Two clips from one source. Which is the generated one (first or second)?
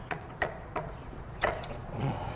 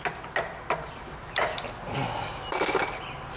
first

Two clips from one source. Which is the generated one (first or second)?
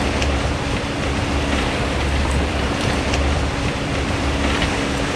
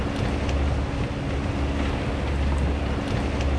first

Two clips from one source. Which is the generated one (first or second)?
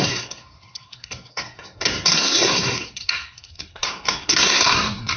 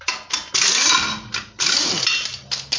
first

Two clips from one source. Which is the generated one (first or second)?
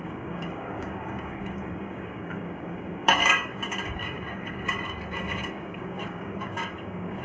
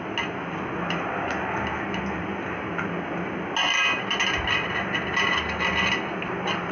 first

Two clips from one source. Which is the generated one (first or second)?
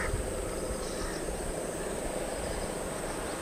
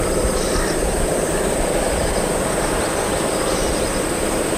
second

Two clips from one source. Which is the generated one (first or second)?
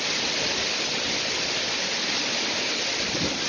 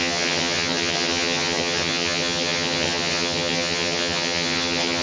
second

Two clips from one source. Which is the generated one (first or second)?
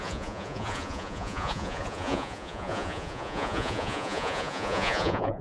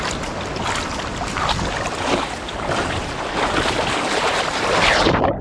first